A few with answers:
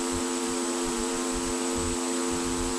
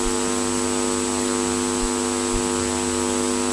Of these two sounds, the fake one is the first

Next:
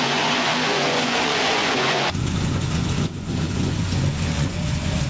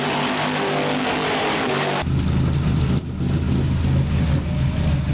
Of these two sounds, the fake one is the first